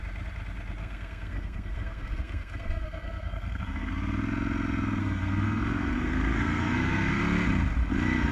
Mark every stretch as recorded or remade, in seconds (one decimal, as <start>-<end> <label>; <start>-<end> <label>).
0.0-0.8 recorded; 0.8-3.9 remade; 3.9-5.0 recorded; 5.0-7.2 remade; 7.2-8.3 recorded